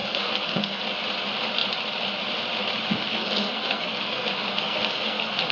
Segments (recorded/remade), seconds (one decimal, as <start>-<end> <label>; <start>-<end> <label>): 0.0-0.8 remade; 0.8-2.9 recorded; 2.9-5.5 remade